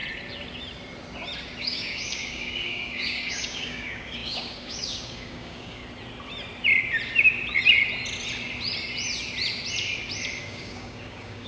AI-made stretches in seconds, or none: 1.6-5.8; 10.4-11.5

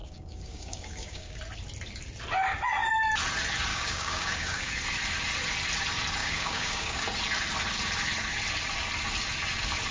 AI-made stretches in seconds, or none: 0.0-1.4; 3.7-4.7; 6.2-7.0

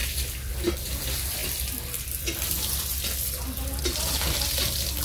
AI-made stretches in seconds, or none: none

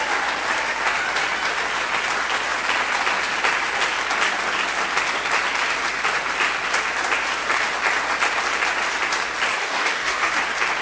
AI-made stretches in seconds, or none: 9.5-10.3